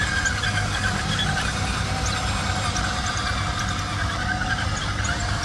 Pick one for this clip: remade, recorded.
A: recorded